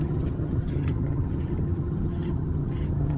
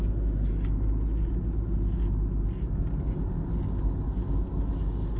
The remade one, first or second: first